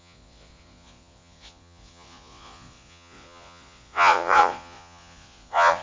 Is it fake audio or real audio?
fake